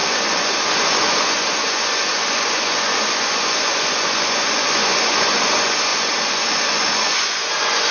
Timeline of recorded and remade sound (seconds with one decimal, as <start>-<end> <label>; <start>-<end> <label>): 0.0-7.9 remade